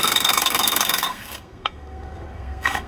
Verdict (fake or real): fake